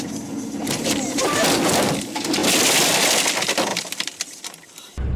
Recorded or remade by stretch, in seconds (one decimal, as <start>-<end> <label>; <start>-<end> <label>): 0.0-0.6 recorded; 0.6-2.0 remade; 2.0-2.4 recorded; 2.4-3.2 remade; 3.2-3.7 recorded; 3.7-5.2 remade